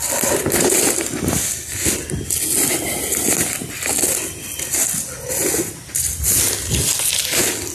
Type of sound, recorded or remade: recorded